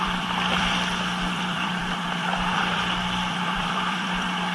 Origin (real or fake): fake